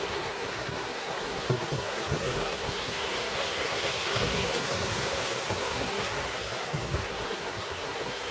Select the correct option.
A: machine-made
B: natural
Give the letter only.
A